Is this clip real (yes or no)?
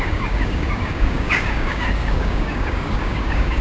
no